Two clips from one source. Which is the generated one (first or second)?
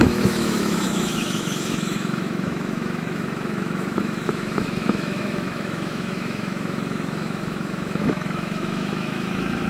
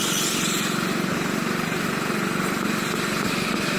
first